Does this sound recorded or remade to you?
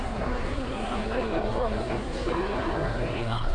remade